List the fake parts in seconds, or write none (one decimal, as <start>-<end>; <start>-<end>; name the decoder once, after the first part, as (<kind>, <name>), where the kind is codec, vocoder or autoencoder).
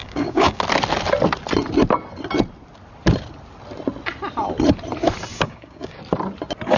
0.0-0.6 (codec, DAC); 5.3-6.0